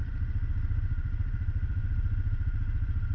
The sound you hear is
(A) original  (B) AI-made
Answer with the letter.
B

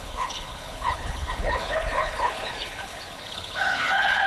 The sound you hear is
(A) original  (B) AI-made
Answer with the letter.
B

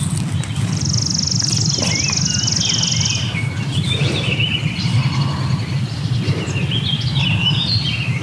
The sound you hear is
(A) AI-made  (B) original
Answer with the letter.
B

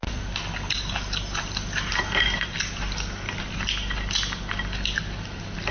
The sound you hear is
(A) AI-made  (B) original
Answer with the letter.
B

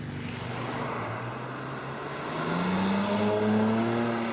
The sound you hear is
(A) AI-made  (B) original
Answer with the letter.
B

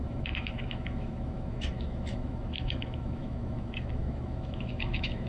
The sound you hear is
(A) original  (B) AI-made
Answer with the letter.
B